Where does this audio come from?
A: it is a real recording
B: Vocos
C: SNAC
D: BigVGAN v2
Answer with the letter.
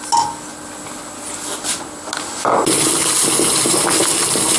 A